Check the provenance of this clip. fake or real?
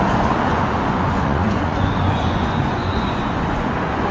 fake